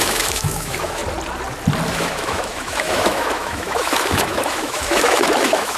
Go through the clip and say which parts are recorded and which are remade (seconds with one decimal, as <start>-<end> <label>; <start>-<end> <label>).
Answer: 0.0-1.0 remade; 1.0-1.9 recorded; 1.9-5.8 remade